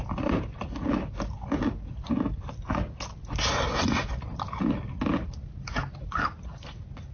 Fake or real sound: real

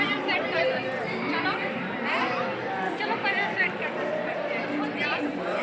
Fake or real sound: real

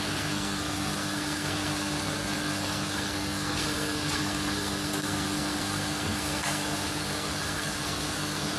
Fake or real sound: fake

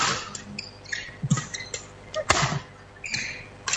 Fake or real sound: real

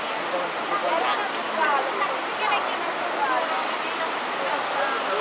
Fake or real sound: real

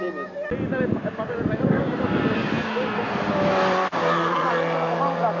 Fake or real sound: real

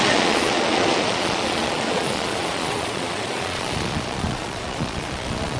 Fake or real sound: fake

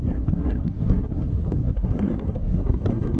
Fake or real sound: fake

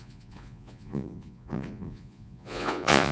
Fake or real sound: fake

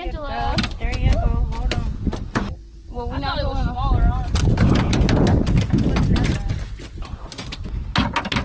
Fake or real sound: real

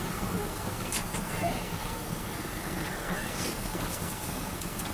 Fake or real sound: fake